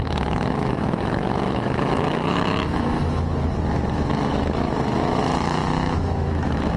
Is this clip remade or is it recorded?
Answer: remade